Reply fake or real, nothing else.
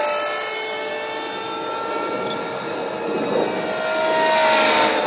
real